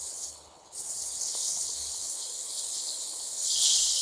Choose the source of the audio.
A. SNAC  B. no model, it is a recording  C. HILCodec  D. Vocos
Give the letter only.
C